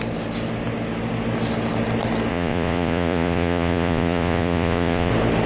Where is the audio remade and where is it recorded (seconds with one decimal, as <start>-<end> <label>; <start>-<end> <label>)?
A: 0.0-2.3 recorded; 2.3-5.1 remade; 5.1-5.5 recorded